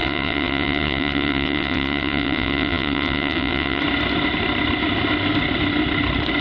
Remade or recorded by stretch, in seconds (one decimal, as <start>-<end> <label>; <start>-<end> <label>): 0.0-3.8 remade; 3.8-6.4 recorded